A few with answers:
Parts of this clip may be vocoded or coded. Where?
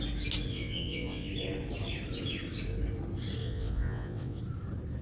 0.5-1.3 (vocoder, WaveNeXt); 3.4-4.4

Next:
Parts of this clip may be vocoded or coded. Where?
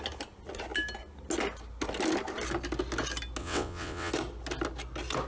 3.4-4.1 (vocoder, WaveNeXt)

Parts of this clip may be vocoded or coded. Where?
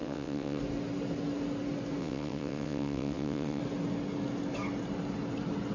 0.0-0.6 (vocoder, WaveNeXt); 2.0-3.6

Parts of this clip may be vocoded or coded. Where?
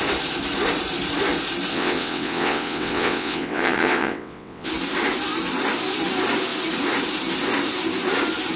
1.7-4.7 (vocoder, WaveNeXt)